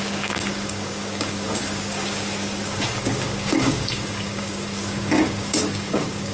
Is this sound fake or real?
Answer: fake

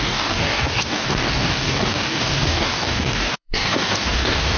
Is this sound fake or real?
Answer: fake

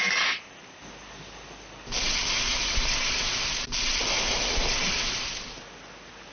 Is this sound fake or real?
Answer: real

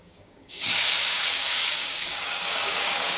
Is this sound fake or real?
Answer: fake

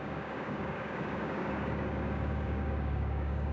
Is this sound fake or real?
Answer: fake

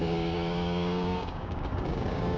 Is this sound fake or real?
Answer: fake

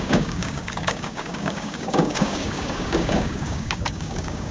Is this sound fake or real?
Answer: fake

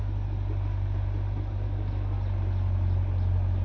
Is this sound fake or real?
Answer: real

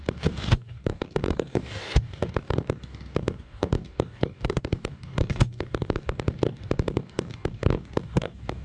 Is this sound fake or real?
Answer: fake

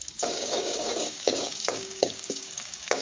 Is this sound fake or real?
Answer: fake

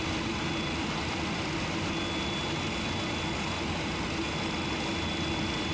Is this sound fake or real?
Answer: real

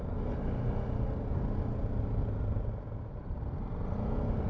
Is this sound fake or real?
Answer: real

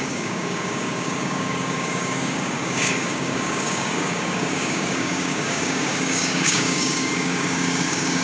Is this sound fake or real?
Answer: fake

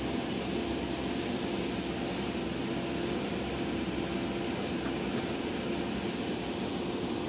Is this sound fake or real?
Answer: real